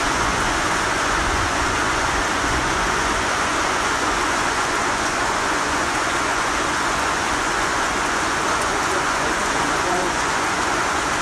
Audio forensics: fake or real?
fake